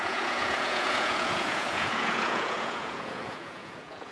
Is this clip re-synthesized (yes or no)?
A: yes